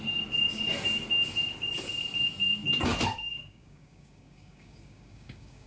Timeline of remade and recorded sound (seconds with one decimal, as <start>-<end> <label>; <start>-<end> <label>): 0.0-3.3 recorded; 3.3-5.7 remade